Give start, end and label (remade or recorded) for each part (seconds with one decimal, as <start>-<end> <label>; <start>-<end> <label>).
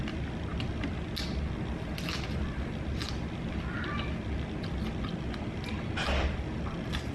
0.0-7.1 recorded